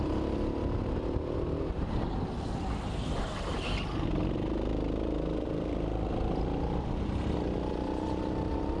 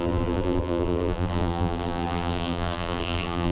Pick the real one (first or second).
first